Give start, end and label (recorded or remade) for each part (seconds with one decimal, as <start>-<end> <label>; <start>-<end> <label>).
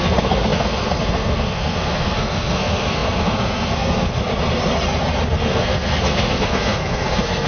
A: 0.0-4.2 remade; 4.2-5.3 recorded; 5.3-7.5 remade